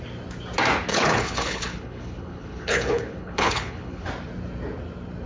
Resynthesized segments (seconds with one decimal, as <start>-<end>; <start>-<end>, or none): 0.9-4.1